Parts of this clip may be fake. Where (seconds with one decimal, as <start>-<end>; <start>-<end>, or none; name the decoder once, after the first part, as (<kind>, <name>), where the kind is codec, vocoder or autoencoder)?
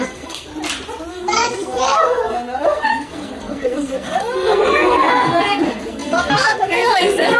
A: 0.0-0.5 (codec, SNAC); 1.1-7.4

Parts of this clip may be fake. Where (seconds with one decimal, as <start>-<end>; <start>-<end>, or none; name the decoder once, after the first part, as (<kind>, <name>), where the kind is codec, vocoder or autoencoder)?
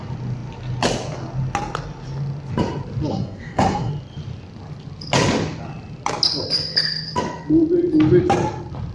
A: 3.1-3.9 (codec, SNAC)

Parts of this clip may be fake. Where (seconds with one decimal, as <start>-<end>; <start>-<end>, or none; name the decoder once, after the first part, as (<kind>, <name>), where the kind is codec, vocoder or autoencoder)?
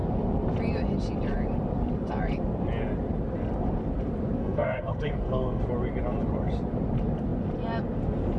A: 4.4-5.6 (codec, SNAC)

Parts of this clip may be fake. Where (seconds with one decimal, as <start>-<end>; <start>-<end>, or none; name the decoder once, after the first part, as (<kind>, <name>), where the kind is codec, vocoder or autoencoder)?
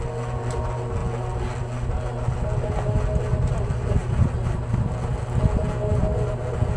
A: none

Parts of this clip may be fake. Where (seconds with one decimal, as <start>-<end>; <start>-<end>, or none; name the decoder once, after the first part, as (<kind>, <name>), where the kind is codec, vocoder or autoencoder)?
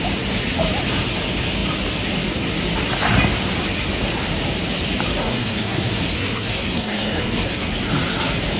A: 5.2-7.7 (codec, SNAC)